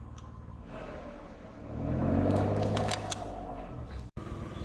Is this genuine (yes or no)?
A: no